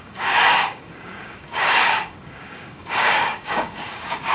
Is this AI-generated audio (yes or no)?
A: yes